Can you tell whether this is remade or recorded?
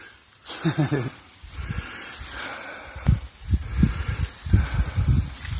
recorded